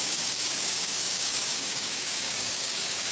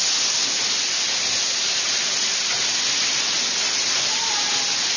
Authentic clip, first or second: second